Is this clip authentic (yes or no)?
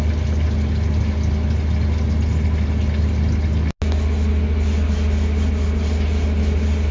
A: yes